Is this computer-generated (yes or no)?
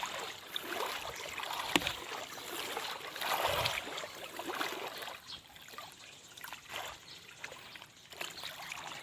no